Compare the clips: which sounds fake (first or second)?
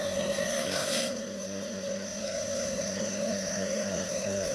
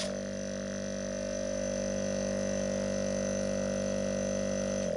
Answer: first